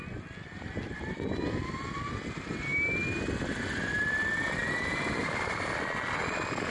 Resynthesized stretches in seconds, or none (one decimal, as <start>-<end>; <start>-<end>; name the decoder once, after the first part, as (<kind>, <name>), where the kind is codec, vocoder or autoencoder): 0.0-2.7 (vocoder, BigVGAN v2); 3.9-4.6; 5.2-6.7